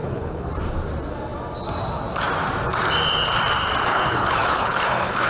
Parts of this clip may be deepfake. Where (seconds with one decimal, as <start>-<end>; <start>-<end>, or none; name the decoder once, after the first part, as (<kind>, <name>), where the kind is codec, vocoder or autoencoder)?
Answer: 0.0-0.5 (codec, HILCodec); 3.9-5.3